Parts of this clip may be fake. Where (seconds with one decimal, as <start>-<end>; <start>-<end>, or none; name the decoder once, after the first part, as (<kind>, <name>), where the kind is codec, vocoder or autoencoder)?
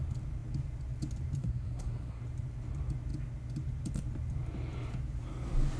1.4-2.2 (codec, SNAC)